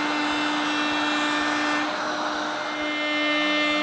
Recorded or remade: recorded